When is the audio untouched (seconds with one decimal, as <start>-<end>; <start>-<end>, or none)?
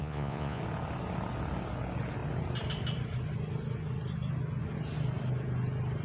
0.6-6.0